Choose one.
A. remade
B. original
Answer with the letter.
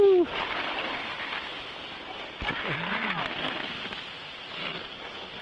B